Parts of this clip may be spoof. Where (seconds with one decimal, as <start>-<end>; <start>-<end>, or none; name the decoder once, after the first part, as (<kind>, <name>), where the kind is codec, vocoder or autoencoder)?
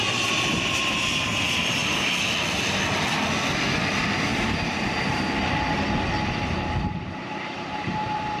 0.0-1.8 (vocoder, BigVGAN v2); 6.8-8.4